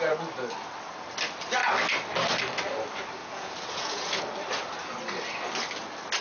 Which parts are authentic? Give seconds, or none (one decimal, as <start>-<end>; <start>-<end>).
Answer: 0.0-3.2; 4.2-6.2